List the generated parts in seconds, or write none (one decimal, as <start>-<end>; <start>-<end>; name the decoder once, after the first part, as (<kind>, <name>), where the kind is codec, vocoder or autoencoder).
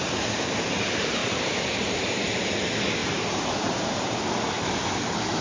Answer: 1.2-2.2 (vocoder, BigVGAN v2); 3.0-4.2